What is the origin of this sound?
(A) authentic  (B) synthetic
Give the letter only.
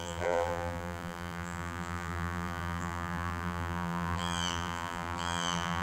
B